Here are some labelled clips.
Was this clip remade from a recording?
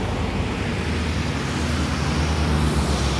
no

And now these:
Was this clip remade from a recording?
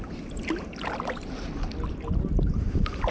no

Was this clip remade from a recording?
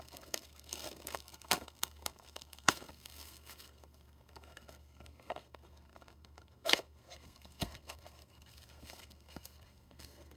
yes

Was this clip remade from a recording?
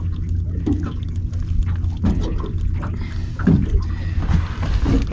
no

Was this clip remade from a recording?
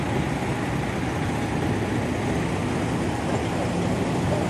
no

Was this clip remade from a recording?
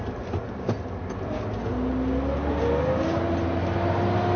no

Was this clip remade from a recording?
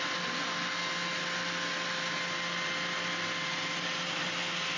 no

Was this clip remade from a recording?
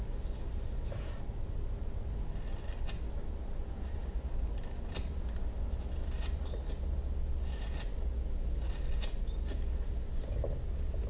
no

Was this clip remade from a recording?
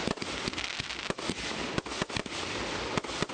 no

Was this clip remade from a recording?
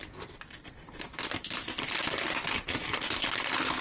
no